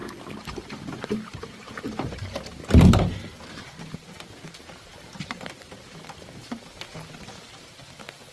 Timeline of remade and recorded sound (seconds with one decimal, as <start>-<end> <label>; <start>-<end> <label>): 0.0-8.3 recorded